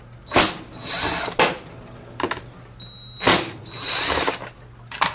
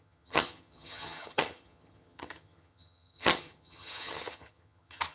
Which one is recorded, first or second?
first